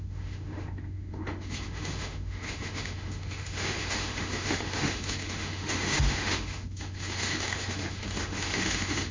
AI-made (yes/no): yes